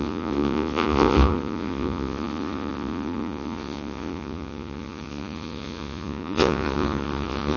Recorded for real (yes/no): no